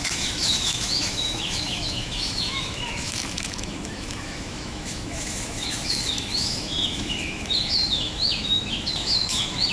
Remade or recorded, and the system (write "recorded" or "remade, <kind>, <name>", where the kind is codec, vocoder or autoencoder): remade, autoencoder, DAC-VAE